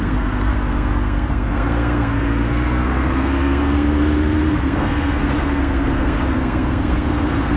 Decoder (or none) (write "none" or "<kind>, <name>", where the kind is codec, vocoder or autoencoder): codec, SNAC